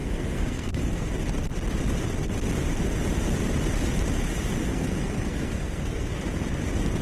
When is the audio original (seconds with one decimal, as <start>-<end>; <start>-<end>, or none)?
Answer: 1.1-4.7; 6.2-7.0